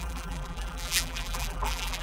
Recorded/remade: remade